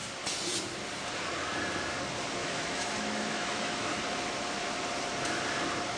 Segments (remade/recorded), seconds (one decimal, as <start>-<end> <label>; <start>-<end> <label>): 0.0-2.4 recorded; 2.4-4.0 remade; 4.0-6.0 recorded

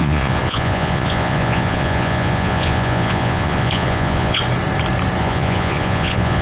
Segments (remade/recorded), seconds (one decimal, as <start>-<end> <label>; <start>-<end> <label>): 0.0-4.4 remade; 4.4-5.2 recorded; 5.2-6.4 remade

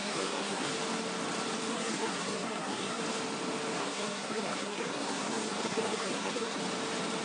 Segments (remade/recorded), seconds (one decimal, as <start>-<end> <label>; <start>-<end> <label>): 0.0-0.7 remade; 0.7-1.7 recorded; 1.7-3.0 remade; 3.0-3.8 recorded; 3.8-6.6 remade; 6.6-7.2 recorded

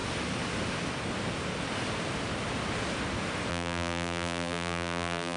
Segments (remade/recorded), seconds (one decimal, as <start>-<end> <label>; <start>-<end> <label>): 0.0-3.5 recorded; 3.5-5.4 remade